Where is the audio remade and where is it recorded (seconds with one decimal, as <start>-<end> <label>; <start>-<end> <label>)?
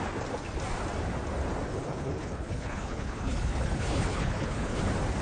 0.0-1.7 recorded; 1.7-4.8 remade; 4.8-5.2 recorded